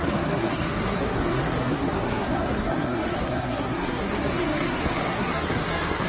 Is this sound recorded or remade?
remade